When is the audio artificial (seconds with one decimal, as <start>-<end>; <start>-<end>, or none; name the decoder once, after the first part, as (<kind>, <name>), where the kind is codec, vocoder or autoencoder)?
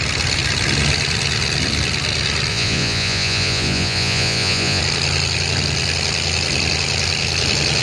2.5-4.8 (vocoder, Vocos)